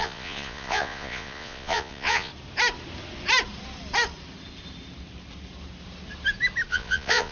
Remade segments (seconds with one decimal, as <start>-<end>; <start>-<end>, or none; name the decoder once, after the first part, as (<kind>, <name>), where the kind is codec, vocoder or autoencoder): 0.0-2.3 (vocoder, Vocos); 6.7-7.3